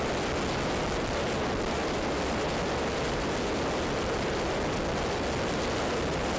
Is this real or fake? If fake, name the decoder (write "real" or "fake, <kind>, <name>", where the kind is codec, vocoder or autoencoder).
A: real